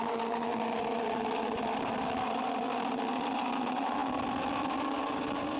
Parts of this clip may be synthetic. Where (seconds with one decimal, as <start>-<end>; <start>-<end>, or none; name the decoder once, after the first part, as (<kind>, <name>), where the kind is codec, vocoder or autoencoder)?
0.5-2.9 (vocoder, BigVGAN v2); 4.0-5.1